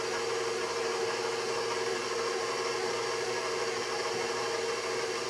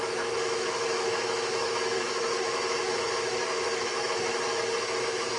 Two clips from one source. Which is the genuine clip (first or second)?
first